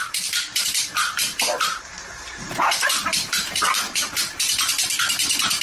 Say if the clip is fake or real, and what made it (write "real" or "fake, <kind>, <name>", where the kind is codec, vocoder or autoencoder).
fake, vocoder, BigVGAN v2